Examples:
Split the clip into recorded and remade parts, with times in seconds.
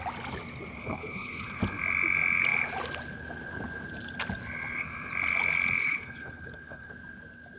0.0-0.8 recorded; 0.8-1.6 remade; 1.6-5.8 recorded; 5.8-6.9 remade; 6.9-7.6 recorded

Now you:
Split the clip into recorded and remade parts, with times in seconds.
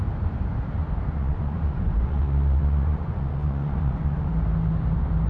0.0-1.1 recorded; 1.1-4.3 remade; 4.3-5.3 recorded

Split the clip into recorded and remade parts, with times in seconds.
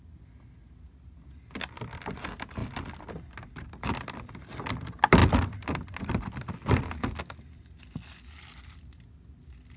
0.0-9.8 recorded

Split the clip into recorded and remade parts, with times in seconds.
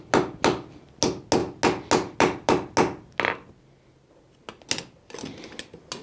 0.0-6.0 recorded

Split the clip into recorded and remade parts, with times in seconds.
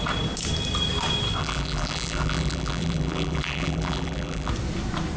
0.0-1.4 recorded; 1.4-4.5 remade; 4.5-5.2 recorded